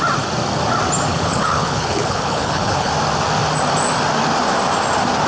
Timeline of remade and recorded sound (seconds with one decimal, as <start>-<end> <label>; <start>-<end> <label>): 0.0-1.1 recorded; 1.1-2.9 remade; 2.9-5.3 recorded